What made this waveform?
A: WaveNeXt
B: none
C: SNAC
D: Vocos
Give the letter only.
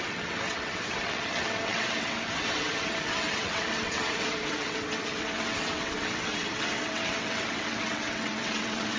A